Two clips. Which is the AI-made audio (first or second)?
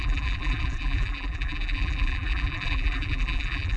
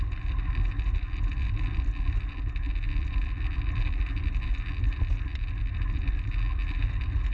first